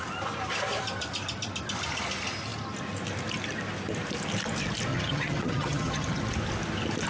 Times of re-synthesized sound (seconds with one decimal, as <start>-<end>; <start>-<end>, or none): 4.9-6.2